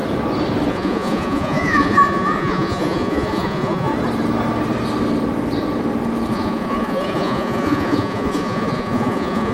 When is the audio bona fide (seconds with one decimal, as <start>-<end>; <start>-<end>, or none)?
0.0-0.7; 3.9-6.3